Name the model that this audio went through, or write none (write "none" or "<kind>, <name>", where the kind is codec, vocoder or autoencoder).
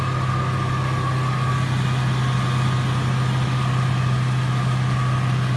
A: none